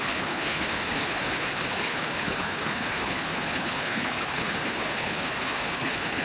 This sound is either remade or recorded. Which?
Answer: remade